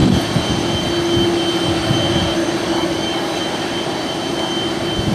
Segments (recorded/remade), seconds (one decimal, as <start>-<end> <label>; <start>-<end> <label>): 0.0-2.4 recorded; 2.4-3.4 remade; 3.4-5.1 recorded

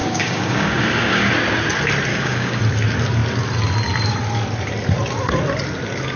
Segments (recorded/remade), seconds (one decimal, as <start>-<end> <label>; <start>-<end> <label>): 0.0-1.3 remade; 1.3-2.1 recorded; 2.1-2.6 remade; 2.6-6.2 recorded

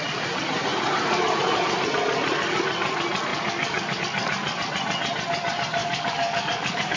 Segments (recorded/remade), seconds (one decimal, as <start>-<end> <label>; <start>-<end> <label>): 0.0-3.3 recorded; 3.3-4.0 remade; 4.0-5.8 recorded; 5.8-7.0 remade

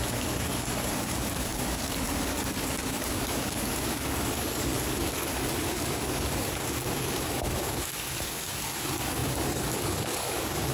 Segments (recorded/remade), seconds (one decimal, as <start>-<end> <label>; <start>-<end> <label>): 0.0-10.7 remade